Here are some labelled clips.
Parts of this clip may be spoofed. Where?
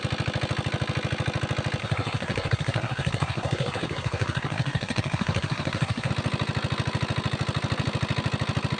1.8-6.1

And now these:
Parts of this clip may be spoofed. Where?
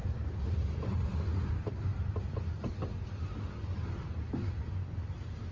0.0-1.2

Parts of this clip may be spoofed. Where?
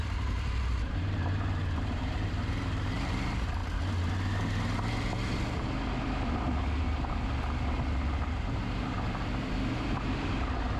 0.0-3.6; 8.2-10.8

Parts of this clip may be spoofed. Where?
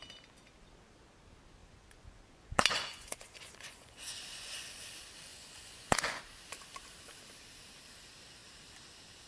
1.6-4.8; 5.3-6.2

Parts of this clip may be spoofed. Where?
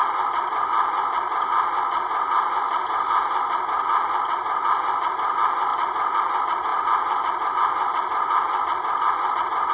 0.0-5.7; 6.2-9.7